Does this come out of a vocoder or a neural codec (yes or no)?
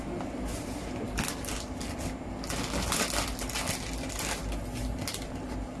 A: no